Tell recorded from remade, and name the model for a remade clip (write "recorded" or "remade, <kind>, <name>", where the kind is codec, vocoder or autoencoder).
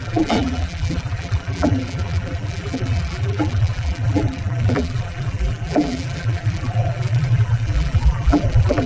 remade, vocoder, BigVGAN v2